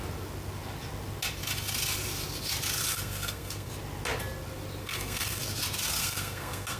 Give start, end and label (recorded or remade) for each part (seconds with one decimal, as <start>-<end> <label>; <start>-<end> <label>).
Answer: 0.0-2.9 recorded; 2.9-3.7 remade; 3.7-4.8 recorded; 4.8-5.4 remade; 5.4-6.0 recorded; 6.0-6.8 remade